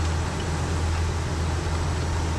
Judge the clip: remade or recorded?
recorded